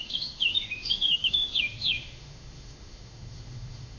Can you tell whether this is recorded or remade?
remade